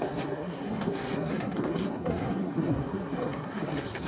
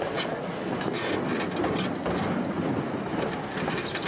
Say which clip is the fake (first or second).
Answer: first